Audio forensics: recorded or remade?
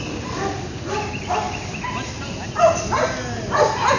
recorded